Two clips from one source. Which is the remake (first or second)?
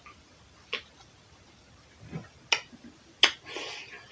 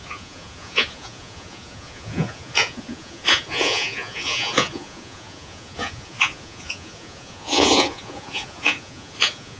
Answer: second